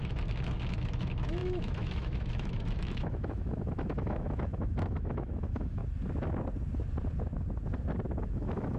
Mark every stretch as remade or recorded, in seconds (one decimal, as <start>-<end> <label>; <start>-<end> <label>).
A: 0.0-5.8 remade; 5.8-8.2 recorded; 8.2-8.8 remade